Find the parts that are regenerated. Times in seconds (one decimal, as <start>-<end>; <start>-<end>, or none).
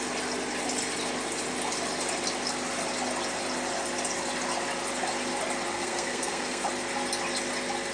5.7-6.7